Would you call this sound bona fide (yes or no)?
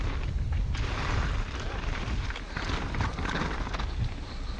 yes